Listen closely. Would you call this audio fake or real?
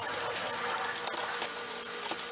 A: real